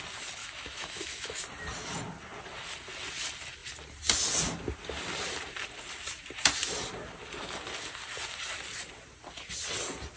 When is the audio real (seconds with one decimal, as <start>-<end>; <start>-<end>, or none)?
0.0-0.4; 1.4-10.2